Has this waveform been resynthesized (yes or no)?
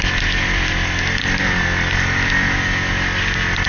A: no